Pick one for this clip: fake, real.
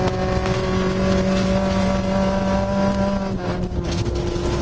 real